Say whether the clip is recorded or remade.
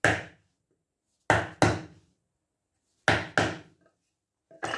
recorded